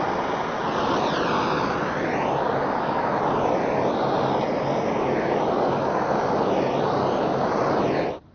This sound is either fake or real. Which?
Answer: real